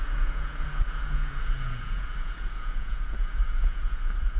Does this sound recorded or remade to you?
remade